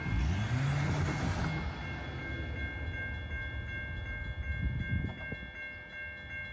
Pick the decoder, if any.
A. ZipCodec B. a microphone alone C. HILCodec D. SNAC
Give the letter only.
B